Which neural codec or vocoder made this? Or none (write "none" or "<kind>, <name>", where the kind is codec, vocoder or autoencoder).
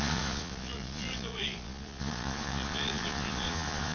vocoder, Vocos